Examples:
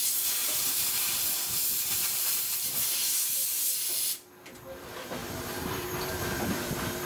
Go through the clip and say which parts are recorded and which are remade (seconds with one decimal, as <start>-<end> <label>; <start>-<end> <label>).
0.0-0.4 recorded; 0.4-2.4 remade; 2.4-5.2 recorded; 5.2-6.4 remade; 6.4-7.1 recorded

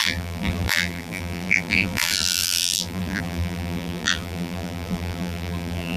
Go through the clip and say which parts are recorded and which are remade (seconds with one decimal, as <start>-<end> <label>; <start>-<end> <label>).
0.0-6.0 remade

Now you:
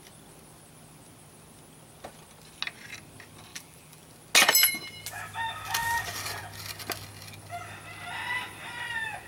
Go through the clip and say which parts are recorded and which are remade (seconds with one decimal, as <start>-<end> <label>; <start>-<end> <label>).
0.0-3.5 recorded; 3.5-4.1 remade; 4.1-9.3 recorded

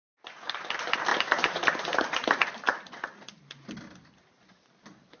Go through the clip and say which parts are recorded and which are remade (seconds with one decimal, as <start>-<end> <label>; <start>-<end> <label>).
0.0-0.6 remade; 0.6-1.1 recorded; 1.1-3.7 remade; 3.7-5.2 recorded

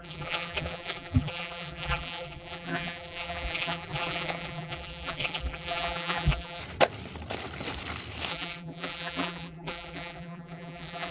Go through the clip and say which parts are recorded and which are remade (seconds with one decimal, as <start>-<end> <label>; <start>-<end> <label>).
0.0-6.6 remade; 6.6-8.3 recorded; 8.3-11.1 remade